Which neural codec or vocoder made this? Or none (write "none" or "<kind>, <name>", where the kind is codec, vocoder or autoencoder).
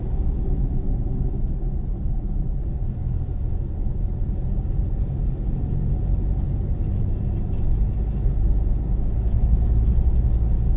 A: none